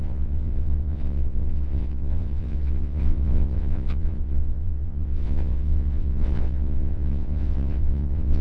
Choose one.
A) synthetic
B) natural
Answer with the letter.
A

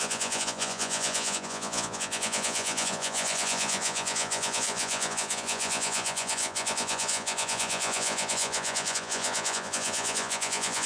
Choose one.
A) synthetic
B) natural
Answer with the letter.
A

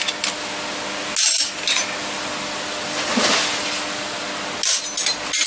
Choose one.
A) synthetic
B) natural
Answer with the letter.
B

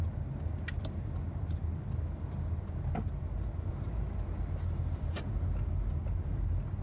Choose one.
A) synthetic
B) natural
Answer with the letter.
B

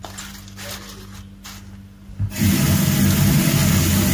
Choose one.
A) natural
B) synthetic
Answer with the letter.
A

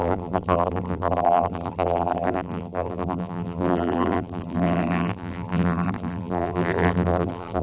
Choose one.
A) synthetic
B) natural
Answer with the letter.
A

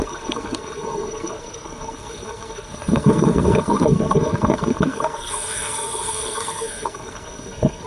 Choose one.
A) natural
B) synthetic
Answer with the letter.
B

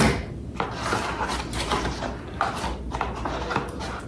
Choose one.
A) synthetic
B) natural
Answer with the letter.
B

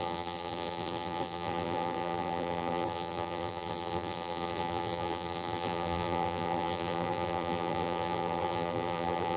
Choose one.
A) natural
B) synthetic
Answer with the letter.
B